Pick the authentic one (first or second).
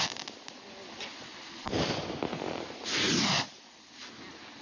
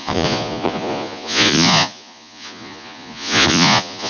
first